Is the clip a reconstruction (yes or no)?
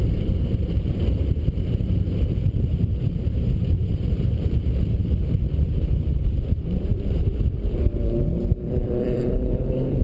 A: yes